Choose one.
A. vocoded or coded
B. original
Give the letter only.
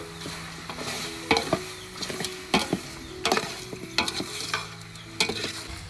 B